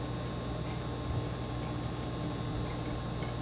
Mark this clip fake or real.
real